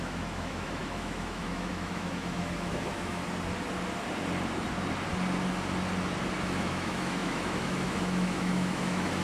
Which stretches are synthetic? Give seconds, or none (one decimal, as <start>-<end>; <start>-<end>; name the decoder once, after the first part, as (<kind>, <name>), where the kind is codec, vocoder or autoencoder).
0.0-3.2 (autoencoder, DAC-VAE); 6.4-9.2

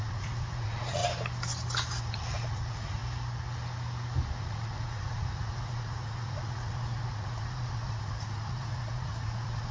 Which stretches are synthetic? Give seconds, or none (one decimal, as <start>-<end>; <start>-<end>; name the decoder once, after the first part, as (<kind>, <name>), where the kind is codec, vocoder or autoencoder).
0.0-1.0 (vocoder, Vocos); 2.0-3.0; 4.4-9.7

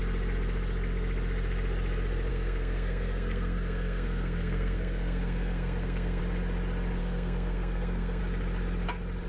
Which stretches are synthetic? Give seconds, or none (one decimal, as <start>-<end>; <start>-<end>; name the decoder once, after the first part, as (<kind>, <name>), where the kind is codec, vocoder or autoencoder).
2.3-6.2 (codec, SNAC); 7.0-8.2

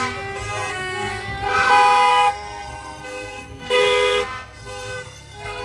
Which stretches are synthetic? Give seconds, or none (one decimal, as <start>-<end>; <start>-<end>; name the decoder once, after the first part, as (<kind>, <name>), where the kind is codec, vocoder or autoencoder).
0.7-1.7 (codec, SNAC); 2.1-5.6